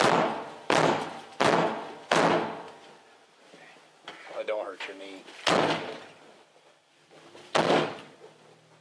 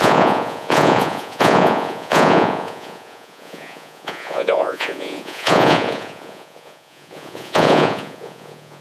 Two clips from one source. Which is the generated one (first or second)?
second